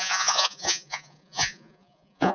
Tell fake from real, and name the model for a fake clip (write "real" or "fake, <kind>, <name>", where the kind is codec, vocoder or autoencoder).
fake, vocoder, Vocos